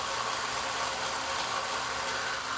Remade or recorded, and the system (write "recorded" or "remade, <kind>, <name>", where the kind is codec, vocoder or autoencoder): recorded